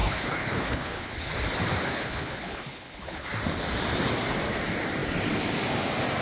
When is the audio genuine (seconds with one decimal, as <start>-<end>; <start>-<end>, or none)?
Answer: 1.3-1.9; 3.3-6.2